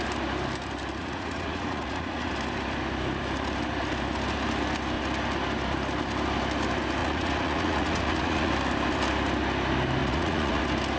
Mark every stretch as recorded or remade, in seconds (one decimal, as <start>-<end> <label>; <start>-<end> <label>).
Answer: 0.0-1.0 recorded; 1.0-2.3 remade; 2.3-7.0 recorded; 7.0-8.5 remade; 8.5-10.0 recorded; 10.0-10.6 remade; 10.6-11.0 recorded

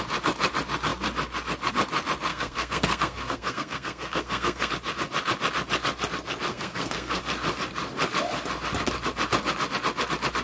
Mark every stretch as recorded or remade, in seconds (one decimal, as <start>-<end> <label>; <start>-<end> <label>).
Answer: 0.0-2.3 recorded; 2.3-4.7 remade; 4.7-6.5 recorded; 6.5-7.2 remade; 7.2-10.4 recorded

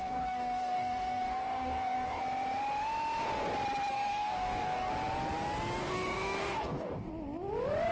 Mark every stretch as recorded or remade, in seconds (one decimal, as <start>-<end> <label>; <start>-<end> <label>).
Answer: 0.0-2.2 remade; 2.2-3.9 recorded; 3.9-4.9 remade; 4.9-5.8 recorded; 5.8-7.1 remade; 7.1-7.9 recorded